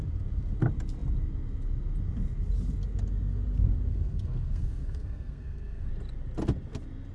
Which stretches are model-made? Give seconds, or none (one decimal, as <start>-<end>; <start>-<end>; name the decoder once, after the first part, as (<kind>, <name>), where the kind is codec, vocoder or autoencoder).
3.9-5.9 (codec, SNAC)